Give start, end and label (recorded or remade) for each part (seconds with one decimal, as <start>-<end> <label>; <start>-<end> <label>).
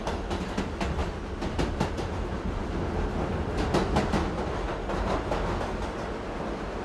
0.0-2.6 remade; 2.6-6.8 recorded